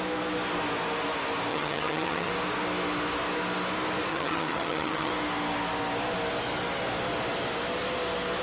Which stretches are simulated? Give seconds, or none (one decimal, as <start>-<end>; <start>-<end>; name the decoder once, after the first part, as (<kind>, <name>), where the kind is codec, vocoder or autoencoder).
1.5-2.3 (vocoder, HiFi-GAN); 4.1-5.1